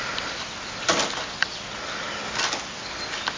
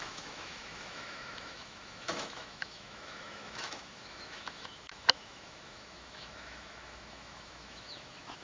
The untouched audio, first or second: first